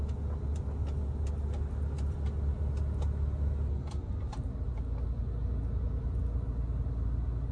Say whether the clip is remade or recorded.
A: recorded